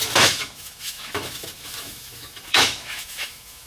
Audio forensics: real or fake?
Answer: fake